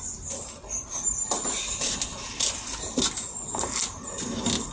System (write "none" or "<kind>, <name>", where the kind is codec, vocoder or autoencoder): none